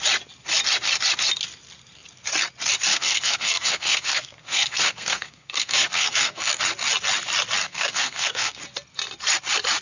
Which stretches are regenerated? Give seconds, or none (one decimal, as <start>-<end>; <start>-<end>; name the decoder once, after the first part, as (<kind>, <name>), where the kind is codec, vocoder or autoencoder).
2.9-6.6 (codec, SNAC); 7.6-8.6